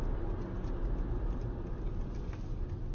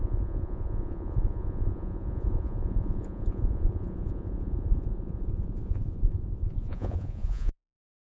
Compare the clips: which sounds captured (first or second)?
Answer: first